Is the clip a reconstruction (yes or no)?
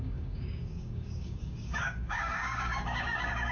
yes